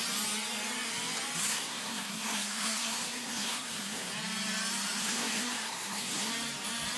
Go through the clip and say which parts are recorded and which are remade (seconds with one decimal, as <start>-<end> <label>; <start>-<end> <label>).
0.0-1.4 recorded; 1.4-4.1 remade; 4.1-5.0 recorded; 5.0-6.3 remade; 6.3-7.0 recorded